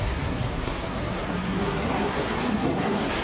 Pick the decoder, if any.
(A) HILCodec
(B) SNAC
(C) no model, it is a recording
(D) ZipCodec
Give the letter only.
B